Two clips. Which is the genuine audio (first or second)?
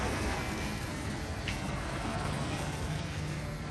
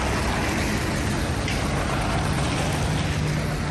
second